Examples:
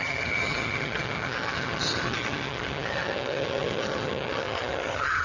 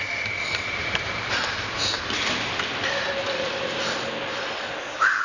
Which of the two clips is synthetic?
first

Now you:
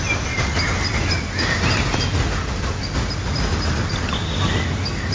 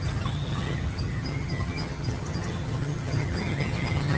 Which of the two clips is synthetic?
second